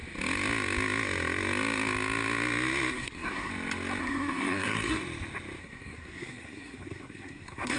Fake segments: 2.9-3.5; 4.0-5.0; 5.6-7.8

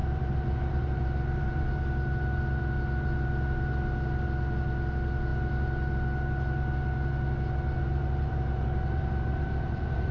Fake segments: 0.0-1.7; 7.8-10.1

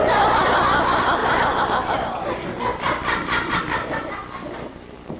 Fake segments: none

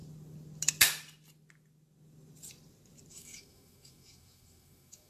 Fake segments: 3.1-5.1